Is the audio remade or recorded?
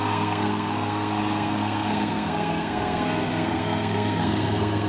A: remade